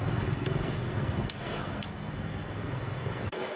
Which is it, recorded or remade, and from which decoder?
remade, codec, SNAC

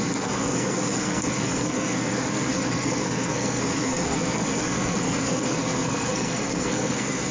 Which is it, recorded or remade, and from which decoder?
remade, codec, SNAC